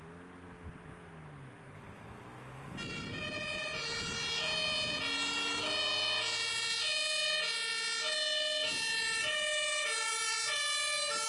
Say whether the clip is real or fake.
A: real